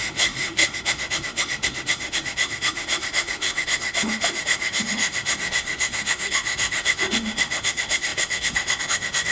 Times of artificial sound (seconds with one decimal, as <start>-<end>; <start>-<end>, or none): 0.0-9.3